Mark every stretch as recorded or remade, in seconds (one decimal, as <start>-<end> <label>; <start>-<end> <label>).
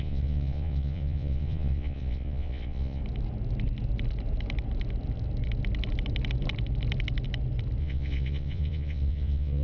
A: 0.0-3.0 remade; 3.0-7.8 recorded; 7.8-9.6 remade